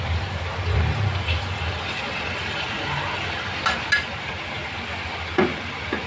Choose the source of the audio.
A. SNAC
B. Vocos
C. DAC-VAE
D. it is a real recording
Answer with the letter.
D